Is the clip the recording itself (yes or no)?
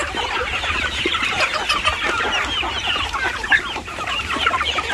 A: yes